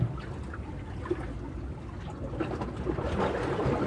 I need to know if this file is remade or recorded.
recorded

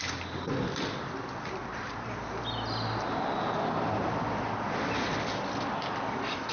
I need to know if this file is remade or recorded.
recorded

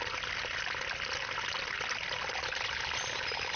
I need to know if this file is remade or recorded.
recorded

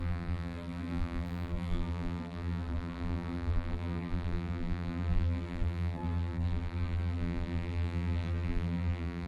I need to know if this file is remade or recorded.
remade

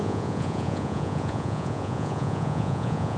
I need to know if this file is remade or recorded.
remade